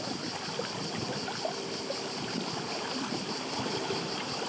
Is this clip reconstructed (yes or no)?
no